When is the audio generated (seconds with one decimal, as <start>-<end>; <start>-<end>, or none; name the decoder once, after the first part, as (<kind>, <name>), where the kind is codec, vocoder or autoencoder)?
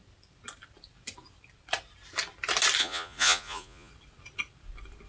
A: 2.8-3.9 (vocoder, Vocos)